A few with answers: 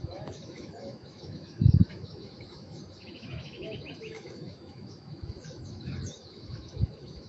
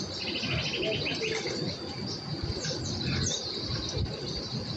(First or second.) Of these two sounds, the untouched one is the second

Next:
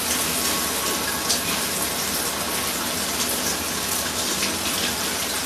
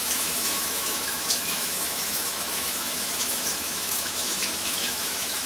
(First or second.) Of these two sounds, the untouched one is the first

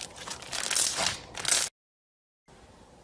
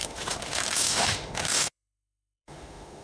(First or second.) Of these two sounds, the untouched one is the first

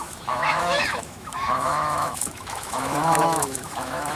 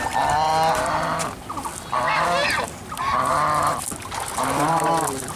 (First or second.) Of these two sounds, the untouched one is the second